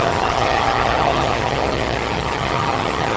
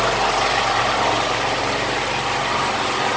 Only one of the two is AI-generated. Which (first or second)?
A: first